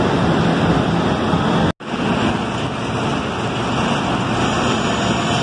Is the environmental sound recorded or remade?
recorded